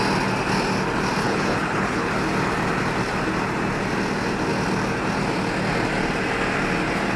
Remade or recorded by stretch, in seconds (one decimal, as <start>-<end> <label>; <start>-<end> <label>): 0.0-1.2 recorded; 1.2-2.1 remade; 2.1-7.2 recorded